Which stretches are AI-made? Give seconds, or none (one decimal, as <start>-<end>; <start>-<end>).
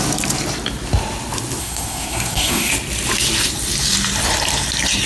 1.6-2.7